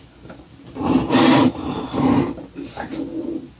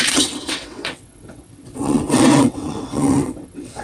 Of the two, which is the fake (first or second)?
second